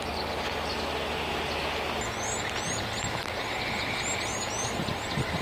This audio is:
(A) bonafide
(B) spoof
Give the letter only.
A